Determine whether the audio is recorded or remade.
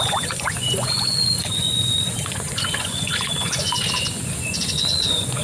remade